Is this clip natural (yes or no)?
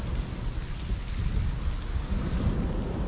yes